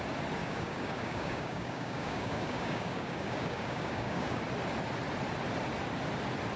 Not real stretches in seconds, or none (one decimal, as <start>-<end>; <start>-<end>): 0.4-4.4